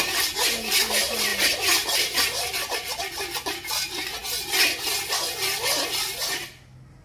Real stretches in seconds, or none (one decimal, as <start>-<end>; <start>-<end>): 0.0-1.3; 3.2-7.0